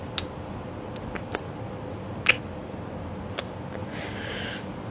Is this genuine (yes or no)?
yes